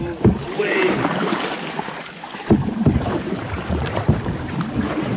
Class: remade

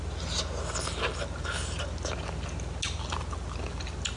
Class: recorded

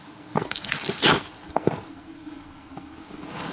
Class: remade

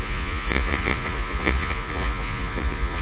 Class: remade